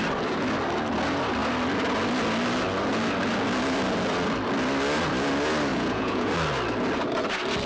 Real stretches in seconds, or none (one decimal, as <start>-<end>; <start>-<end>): 0.0-5.7; 6.3-7.7